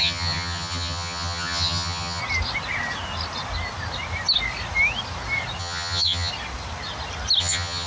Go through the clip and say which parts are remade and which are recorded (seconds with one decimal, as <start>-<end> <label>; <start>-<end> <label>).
0.0-2.2 remade; 2.2-5.6 recorded; 5.6-6.3 remade; 6.3-7.4 recorded; 7.4-7.9 remade